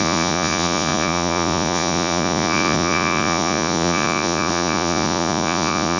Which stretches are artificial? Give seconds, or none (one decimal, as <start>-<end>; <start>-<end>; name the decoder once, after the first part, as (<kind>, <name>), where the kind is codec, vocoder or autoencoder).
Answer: 0.0-6.0 (vocoder, Vocos)